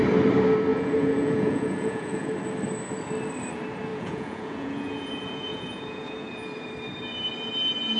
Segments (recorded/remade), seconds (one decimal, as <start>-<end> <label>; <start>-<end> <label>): 0.0-0.7 recorded; 0.7-2.3 remade; 2.3-3.9 recorded; 3.9-6.7 remade; 6.7-8.0 recorded